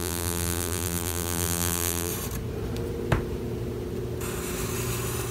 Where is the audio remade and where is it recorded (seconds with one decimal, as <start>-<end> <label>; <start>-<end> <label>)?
0.0-2.1 remade; 2.1-5.3 recorded